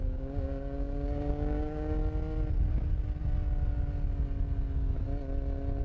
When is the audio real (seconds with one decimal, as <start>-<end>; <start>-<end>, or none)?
2.0-5.8